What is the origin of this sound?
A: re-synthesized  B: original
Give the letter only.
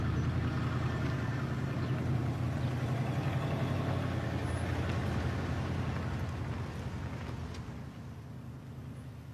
B